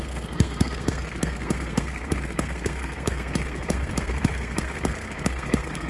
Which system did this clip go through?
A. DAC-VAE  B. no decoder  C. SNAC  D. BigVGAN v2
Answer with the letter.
C